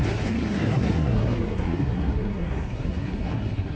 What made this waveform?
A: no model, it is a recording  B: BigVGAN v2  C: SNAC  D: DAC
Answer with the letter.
C